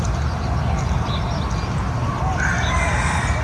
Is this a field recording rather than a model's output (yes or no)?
yes